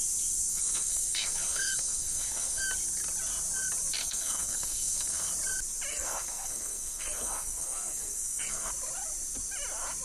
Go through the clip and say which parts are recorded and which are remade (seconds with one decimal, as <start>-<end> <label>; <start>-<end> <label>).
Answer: 0.0-0.5 recorded; 0.5-2.6 remade; 2.6-4.0 recorded; 4.0-5.3 remade; 5.3-5.9 recorded; 5.9-8.7 remade; 8.7-10.0 recorded